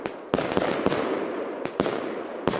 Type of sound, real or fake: real